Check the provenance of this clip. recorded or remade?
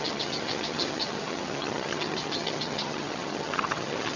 remade